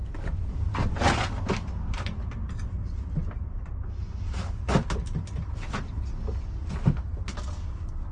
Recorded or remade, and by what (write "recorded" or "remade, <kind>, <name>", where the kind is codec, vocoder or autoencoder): recorded